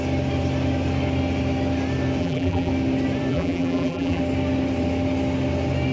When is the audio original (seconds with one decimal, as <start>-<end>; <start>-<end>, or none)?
0.0-2.2; 2.7-3.3; 4.2-5.9